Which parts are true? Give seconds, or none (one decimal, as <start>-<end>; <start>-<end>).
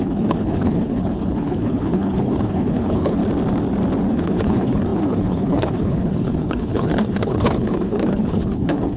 3.2-4.1